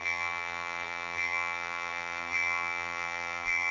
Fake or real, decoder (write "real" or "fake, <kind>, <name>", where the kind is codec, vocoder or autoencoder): fake, vocoder, BigVGAN v2